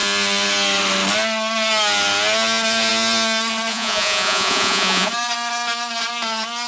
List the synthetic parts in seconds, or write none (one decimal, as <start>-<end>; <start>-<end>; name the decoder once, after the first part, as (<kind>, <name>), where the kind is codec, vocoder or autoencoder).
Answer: 3.7-5.1 (vocoder, Vocos)